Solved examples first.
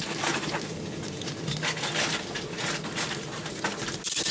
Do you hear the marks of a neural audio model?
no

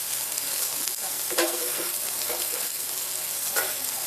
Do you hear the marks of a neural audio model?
yes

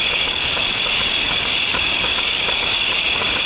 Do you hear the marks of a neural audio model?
yes